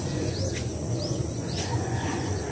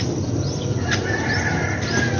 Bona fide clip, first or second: second